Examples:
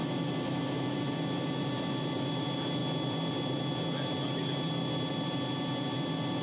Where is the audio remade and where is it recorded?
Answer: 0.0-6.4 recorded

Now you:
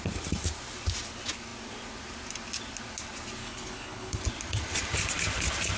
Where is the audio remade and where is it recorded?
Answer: 0.0-3.4 recorded; 3.4-4.2 remade; 4.2-5.8 recorded

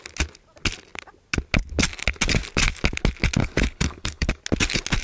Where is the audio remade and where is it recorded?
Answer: 0.0-3.4 recorded; 3.4-4.3 remade; 4.3-5.0 recorded